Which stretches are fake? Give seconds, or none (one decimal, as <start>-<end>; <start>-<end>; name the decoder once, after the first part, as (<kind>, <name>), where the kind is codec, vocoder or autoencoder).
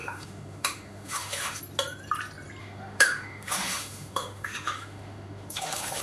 0.0-1.6 (autoencoder, DAC-VAE); 2.6-6.0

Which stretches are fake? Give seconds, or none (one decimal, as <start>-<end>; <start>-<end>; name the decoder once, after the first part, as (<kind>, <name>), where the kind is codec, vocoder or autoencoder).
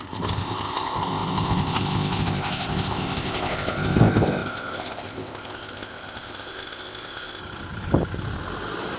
0.0-7.4 (codec, ZipCodec)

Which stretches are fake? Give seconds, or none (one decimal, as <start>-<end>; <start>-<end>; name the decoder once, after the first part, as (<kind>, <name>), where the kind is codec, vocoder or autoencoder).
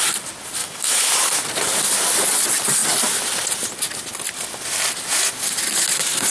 0.6-1.1 (autoencoder, DAC-VAE)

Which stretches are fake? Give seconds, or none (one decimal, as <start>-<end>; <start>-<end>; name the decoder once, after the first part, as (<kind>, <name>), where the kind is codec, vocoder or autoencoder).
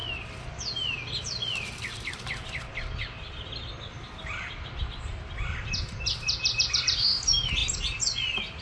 0.0-8.6 (vocoder, BigVGAN v2)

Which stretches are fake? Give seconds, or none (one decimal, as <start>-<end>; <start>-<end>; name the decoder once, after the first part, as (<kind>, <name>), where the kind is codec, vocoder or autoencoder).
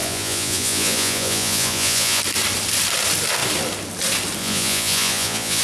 0.0-2.2 (vocoder, Vocos); 4.4-5.6